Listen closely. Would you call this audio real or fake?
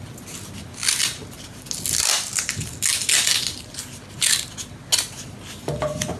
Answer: real